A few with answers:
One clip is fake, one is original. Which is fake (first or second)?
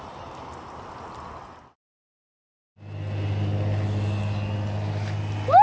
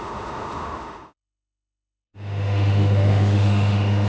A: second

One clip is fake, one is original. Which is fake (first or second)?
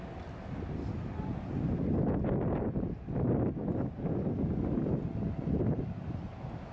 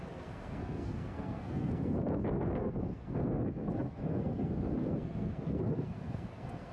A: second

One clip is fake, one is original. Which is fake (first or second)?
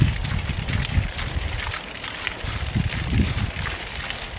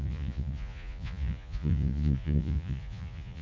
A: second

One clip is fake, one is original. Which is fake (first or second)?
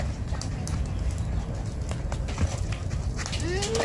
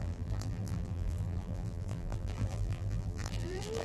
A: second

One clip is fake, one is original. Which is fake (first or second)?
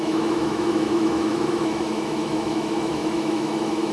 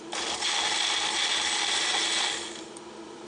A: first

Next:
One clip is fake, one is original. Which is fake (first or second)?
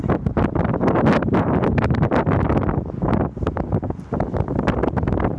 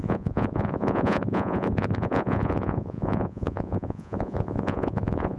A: second